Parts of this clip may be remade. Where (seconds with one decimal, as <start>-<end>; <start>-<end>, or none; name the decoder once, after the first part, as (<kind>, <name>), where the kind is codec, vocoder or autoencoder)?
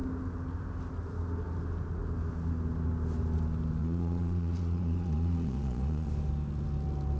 3.8-6.1 (vocoder, Vocos)